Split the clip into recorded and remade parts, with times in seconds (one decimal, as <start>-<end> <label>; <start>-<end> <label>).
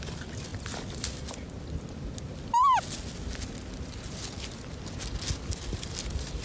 0.0-6.4 recorded